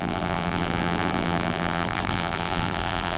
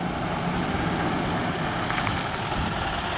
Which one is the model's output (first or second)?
first